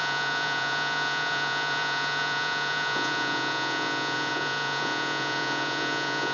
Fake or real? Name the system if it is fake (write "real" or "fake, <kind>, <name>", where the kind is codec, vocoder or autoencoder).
fake, vocoder, Vocos